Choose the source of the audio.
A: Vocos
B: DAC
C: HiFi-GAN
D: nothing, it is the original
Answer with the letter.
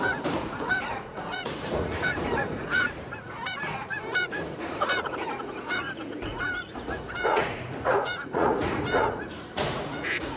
A